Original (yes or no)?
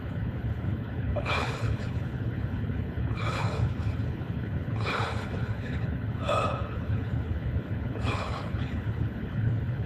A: no